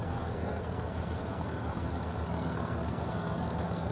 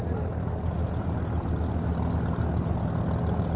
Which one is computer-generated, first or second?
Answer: first